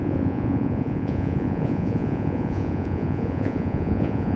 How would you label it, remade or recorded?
remade